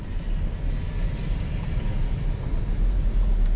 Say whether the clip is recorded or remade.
recorded